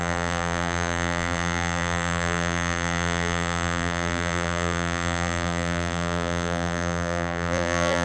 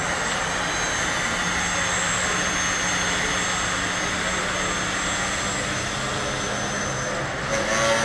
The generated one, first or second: first